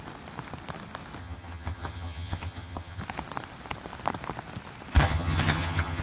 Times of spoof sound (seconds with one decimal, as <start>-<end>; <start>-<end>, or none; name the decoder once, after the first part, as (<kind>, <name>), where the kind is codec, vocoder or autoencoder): 1.2-3.0 (vocoder, HiFi-GAN); 5.0-6.0